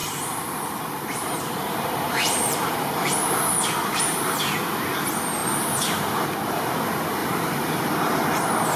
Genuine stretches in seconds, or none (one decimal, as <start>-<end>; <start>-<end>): 4.0-5.4; 6.5-7.2; 7.9-8.8